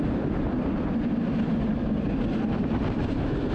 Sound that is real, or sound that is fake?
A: real